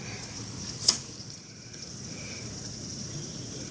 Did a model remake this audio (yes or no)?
yes